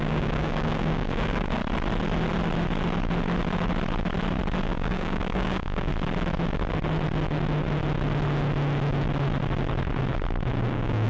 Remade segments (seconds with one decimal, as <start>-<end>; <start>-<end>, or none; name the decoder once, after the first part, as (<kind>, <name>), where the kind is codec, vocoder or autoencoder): 0.0-1.6 (codec, DAC); 4.6-5.9; 10.7-11.1